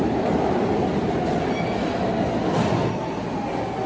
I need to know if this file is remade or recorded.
recorded